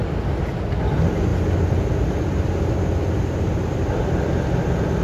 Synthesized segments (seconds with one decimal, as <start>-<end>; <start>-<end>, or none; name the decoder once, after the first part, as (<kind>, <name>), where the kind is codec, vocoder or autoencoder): none